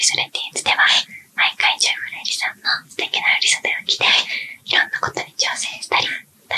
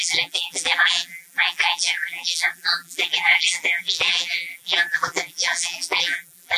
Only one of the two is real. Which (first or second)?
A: first